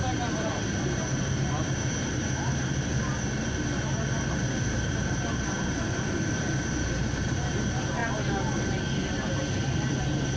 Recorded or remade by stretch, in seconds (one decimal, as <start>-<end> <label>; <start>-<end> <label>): 0.0-8.0 remade; 8.0-10.0 recorded; 10.0-10.4 remade

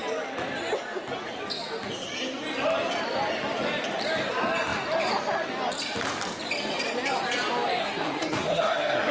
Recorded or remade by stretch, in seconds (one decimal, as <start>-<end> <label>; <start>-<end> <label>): 0.0-7.8 recorded; 7.8-9.1 remade

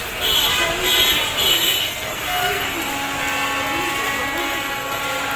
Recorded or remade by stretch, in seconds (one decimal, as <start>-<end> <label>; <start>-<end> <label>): 0.0-1.5 recorded; 1.5-2.9 remade; 2.9-4.4 recorded; 4.4-5.0 remade; 5.0-5.4 recorded

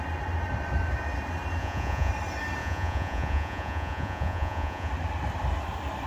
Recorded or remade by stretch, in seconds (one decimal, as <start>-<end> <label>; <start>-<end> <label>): 0.0-1.6 recorded; 1.6-2.1 remade; 2.1-2.6 recorded; 2.6-4.9 remade; 4.9-6.1 recorded

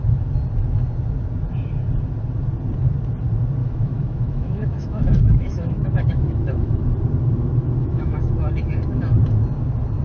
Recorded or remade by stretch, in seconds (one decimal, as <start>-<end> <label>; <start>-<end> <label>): 0.0-3.6 recorded; 3.6-6.8 remade; 6.8-7.8 recorded; 7.8-8.3 remade; 8.3-10.0 recorded